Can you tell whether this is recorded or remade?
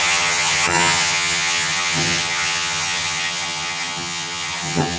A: remade